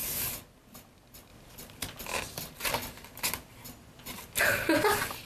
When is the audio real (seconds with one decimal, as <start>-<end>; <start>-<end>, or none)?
0.0-5.3